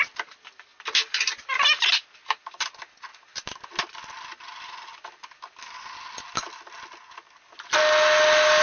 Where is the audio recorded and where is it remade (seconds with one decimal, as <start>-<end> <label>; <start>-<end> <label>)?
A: 0.0-8.6 recorded